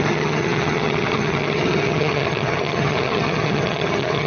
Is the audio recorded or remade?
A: remade